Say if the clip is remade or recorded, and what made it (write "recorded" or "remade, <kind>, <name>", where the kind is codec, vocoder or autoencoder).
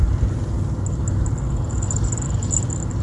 recorded